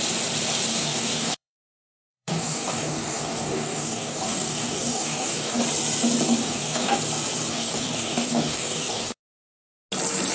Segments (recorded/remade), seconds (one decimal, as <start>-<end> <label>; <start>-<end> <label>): 0.0-0.7 recorded; 0.7-5.6 remade; 5.6-6.4 recorded; 6.4-7.0 remade; 7.0-7.5 recorded; 7.5-9.2 remade; 9.2-10.3 recorded

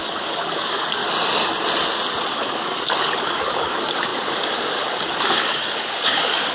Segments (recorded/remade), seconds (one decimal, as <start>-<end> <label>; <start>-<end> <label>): 0.0-1.0 remade; 1.0-2.3 recorded; 2.3-6.5 remade

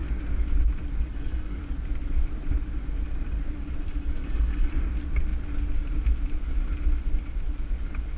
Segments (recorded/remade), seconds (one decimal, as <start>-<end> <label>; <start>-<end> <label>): 0.0-1.1 recorded; 1.1-1.6 remade; 1.6-3.9 recorded; 3.9-4.7 remade; 4.7-8.2 recorded

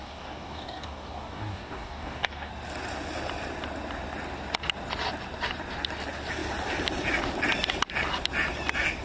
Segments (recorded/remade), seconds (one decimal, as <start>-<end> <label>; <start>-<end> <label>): 0.0-2.5 remade; 2.5-9.0 recorded

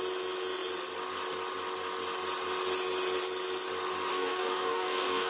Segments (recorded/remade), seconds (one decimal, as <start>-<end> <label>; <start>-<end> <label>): 0.0-4.1 recorded; 4.1-5.3 remade

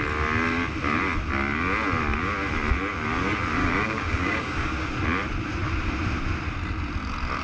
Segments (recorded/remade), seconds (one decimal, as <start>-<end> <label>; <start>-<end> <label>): 0.0-3.6 recorded; 3.6-4.9 remade; 4.9-7.4 recorded

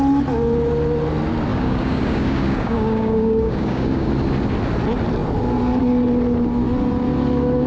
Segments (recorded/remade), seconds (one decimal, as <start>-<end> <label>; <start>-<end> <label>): 0.0-1.5 recorded; 1.5-4.1 remade; 4.1-7.7 recorded

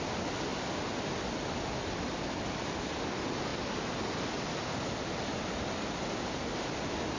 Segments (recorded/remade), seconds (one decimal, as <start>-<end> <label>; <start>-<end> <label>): 0.0-7.2 recorded